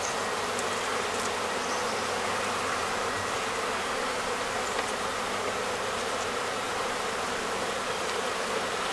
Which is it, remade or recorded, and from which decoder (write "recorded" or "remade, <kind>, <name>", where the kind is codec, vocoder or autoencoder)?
remade, vocoder, BigVGAN v2